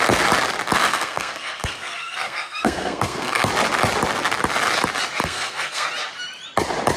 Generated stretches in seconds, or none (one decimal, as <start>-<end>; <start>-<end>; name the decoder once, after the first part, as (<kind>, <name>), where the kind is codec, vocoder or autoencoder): 0.9-3.5 (codec, SNAC); 5.2-5.9